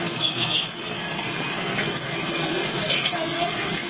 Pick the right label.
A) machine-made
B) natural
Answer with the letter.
A